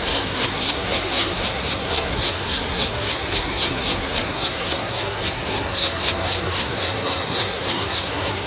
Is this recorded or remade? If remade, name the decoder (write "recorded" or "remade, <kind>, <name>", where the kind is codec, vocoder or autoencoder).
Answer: remade, codec, SNAC